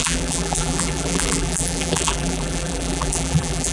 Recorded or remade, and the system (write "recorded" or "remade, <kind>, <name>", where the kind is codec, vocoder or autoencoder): remade, vocoder, BigVGAN v2